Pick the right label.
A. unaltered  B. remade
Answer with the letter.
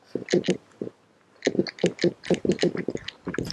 A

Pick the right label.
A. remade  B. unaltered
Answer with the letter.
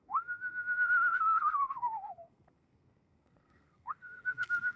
A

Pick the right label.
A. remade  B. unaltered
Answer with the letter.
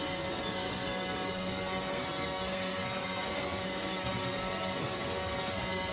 A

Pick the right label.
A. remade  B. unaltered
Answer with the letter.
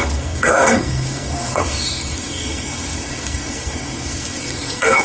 A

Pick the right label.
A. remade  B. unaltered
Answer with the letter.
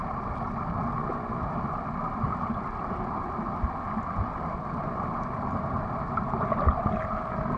B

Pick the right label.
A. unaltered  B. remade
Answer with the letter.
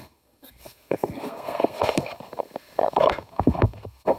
B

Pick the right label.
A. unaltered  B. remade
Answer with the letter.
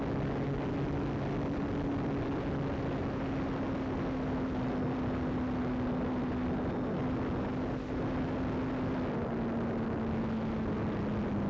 A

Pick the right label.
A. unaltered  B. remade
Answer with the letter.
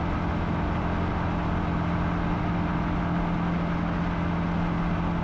A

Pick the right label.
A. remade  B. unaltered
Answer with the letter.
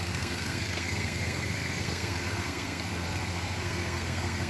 A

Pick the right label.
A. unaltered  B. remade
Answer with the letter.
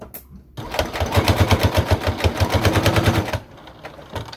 A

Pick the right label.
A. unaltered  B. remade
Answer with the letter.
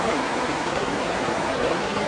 B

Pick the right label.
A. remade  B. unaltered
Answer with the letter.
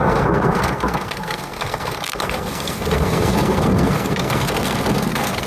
A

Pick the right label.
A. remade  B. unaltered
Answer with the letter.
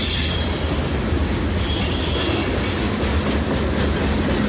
B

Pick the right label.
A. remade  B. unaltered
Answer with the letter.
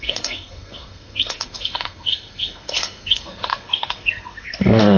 A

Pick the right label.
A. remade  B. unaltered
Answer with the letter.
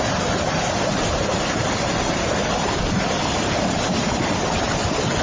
B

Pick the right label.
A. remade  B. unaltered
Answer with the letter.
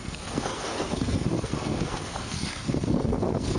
A